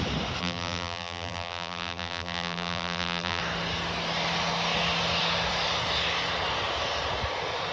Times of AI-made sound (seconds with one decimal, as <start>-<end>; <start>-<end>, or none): 0.4-3.4